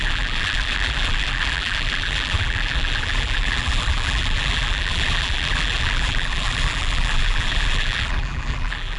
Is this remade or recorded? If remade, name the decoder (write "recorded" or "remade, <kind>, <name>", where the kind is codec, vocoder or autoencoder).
remade, vocoder, BigVGAN v2